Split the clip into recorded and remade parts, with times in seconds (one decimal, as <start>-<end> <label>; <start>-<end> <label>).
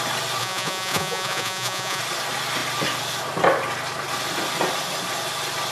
0.0-0.4 recorded; 0.4-2.0 remade; 2.0-5.7 recorded